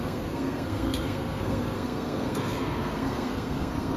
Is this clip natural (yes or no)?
no